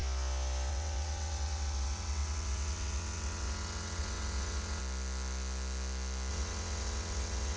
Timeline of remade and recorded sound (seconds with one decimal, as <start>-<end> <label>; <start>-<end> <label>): 0.0-0.7 recorded; 0.7-4.8 remade; 4.8-6.3 recorded; 6.3-7.6 remade